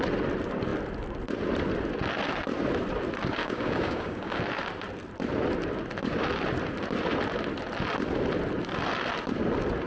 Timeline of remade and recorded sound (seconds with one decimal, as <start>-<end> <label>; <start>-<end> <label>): 0.0-3.4 recorded; 3.4-4.4 remade; 4.4-9.9 recorded